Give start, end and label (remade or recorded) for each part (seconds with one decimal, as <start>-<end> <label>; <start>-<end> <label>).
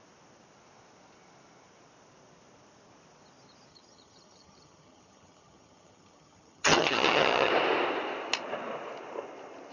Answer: 0.0-3.7 recorded; 3.7-7.5 remade; 7.5-9.7 recorded